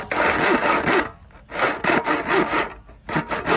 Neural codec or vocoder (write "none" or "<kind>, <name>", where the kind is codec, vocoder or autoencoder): none